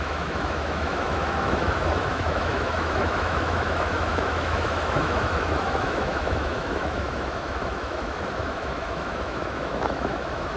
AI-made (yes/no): yes